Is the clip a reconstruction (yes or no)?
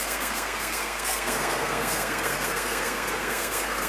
yes